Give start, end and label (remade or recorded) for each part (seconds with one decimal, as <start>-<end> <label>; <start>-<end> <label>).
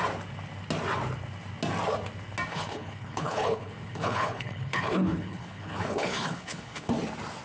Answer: 0.0-2.5 recorded; 2.5-6.9 remade; 6.9-7.4 recorded